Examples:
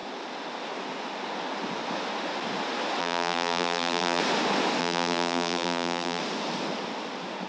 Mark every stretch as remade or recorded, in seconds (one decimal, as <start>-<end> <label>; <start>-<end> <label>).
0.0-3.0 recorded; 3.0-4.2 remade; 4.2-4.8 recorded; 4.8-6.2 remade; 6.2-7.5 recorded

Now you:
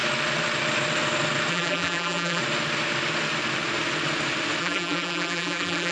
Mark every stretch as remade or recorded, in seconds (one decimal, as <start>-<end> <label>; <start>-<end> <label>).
0.0-1.5 recorded; 1.5-2.4 remade; 2.4-4.6 recorded; 4.6-5.9 remade

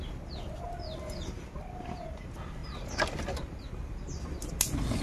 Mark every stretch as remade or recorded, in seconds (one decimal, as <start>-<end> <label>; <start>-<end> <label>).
0.0-5.0 recorded